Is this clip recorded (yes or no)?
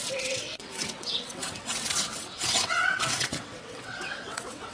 no